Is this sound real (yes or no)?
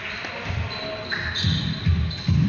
yes